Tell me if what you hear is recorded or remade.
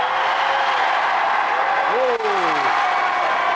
recorded